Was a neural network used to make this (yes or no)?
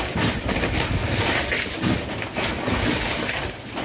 no